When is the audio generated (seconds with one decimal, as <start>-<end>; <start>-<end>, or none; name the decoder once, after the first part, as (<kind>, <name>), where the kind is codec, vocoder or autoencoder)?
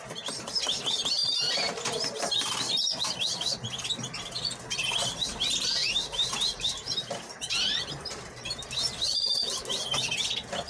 1.2-1.8 (vocoder, BigVGAN v2); 5.8-8.6